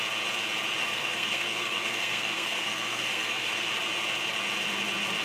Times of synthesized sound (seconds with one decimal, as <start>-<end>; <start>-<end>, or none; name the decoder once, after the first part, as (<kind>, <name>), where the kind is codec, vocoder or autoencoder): 0.8-3.7 (codec, SNAC)